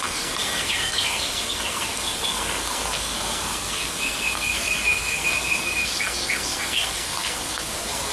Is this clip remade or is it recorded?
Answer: remade